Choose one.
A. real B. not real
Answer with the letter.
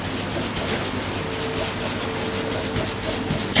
A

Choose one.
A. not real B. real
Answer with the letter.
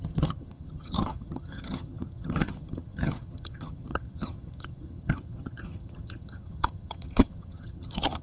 A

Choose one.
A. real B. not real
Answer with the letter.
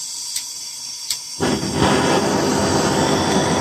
A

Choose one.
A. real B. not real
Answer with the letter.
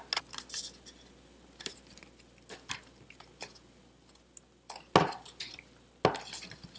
A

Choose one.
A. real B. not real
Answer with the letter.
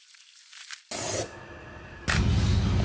A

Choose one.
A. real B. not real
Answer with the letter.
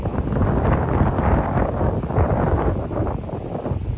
A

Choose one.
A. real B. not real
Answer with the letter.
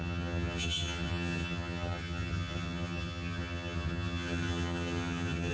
B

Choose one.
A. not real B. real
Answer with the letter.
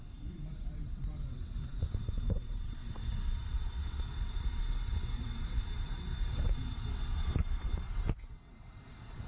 A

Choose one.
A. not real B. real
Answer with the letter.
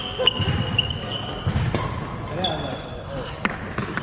B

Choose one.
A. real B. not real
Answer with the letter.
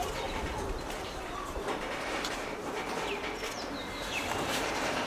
B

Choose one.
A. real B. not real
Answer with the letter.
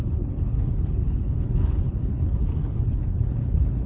B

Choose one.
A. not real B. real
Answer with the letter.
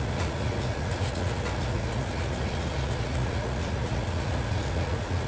A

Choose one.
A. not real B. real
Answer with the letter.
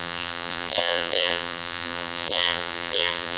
A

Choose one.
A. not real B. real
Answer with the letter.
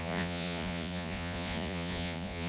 A